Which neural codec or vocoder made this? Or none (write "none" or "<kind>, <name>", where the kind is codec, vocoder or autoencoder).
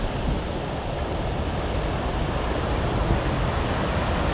none